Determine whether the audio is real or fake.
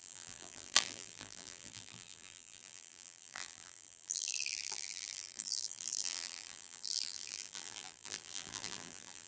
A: fake